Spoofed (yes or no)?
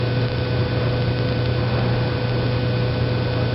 no